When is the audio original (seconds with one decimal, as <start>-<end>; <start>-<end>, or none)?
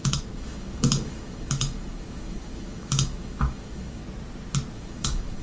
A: 4.0-4.7